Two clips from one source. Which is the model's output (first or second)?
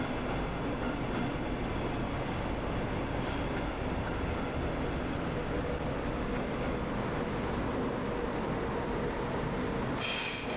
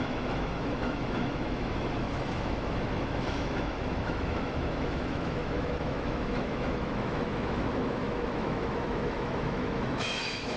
second